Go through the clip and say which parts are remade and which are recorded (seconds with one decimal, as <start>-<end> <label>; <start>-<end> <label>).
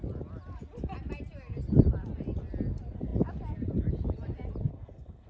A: 0.0-4.7 recorded; 4.7-5.3 remade